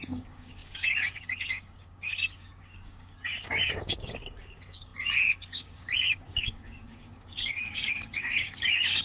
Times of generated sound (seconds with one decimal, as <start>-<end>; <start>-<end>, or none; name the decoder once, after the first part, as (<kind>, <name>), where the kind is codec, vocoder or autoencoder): 0.0-9.0 (codec, DAC)